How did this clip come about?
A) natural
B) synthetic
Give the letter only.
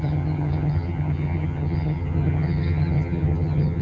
B